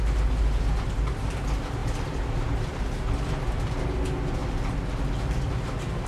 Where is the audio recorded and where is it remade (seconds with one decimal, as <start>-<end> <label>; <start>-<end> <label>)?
0.0-6.1 recorded